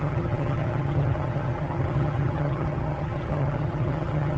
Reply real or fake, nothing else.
fake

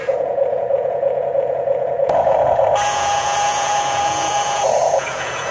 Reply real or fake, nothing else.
fake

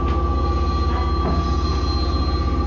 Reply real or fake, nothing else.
real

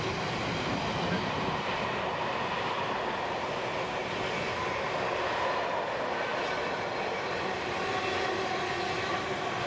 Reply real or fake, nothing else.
real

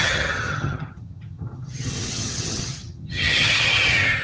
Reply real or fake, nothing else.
fake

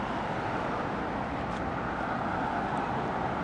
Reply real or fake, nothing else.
real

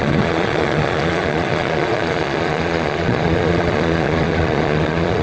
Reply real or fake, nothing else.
fake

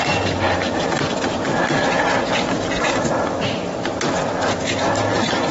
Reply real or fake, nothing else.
real